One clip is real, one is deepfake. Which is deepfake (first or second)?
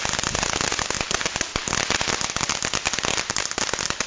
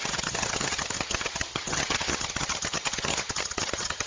second